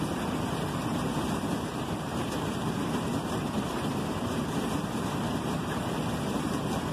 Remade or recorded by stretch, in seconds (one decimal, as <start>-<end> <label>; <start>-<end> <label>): 0.0-6.9 remade